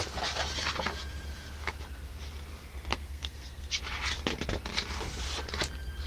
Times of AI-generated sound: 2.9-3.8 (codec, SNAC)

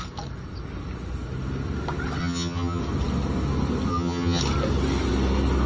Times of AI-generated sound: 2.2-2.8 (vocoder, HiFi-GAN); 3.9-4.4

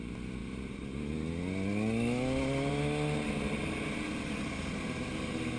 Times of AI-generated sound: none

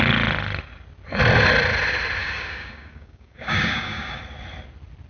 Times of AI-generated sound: 2.2-4.2 (codec, DAC)